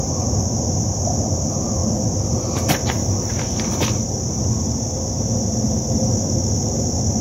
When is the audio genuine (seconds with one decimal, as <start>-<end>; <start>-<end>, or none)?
0.0-7.2